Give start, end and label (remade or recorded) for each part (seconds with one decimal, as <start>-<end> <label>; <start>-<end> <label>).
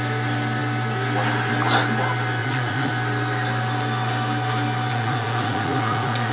0.0-2.4 recorded; 2.4-2.9 remade; 2.9-4.9 recorded; 4.9-6.3 remade